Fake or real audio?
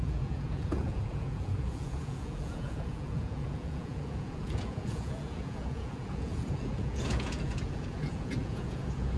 fake